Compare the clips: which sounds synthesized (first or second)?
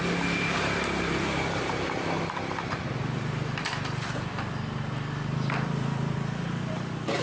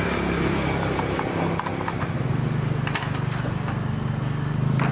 first